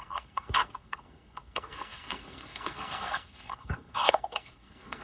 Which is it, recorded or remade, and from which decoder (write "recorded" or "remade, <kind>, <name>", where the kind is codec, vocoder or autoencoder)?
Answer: remade, codec, SNAC